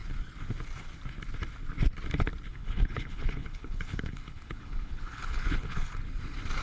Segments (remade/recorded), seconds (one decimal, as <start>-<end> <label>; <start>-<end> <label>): 0.0-2.5 recorded; 2.5-5.9 remade; 5.9-6.6 recorded